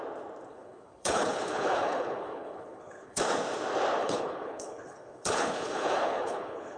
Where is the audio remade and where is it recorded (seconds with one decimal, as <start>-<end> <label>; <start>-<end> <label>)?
0.0-0.5 recorded; 0.5-3.2 remade; 3.2-4.0 recorded; 4.0-6.8 remade